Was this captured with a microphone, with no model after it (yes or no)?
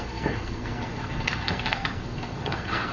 no